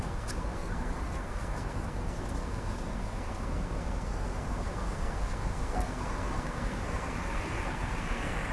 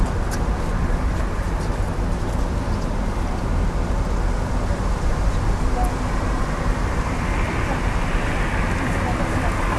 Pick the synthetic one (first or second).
first